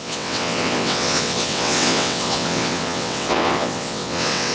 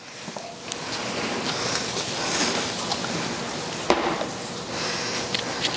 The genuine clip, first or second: second